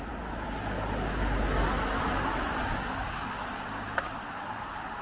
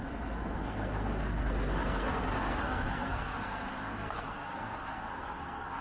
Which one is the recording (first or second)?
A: first